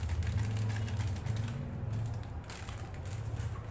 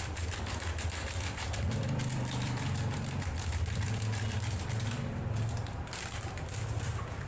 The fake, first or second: second